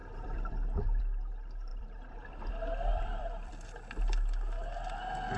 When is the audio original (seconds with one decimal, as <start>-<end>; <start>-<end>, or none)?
1.0-1.7; 2.5-2.9; 3.5-5.4